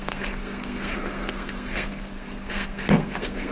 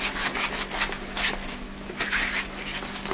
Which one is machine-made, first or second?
first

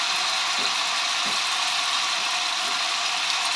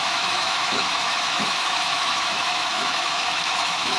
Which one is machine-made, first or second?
second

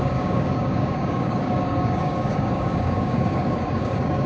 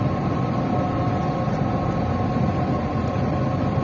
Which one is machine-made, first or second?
first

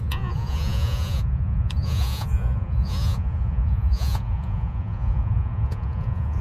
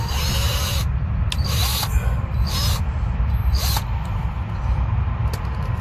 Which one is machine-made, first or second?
first